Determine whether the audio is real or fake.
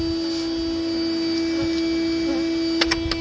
real